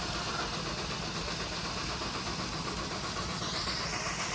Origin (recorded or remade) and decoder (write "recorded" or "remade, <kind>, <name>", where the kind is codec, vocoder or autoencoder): recorded